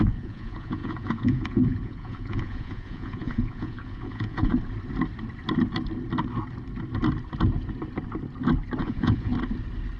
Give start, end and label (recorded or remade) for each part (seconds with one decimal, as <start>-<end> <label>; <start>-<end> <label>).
0.0-4.5 remade; 4.5-8.8 recorded; 8.8-9.3 remade; 9.3-10.0 recorded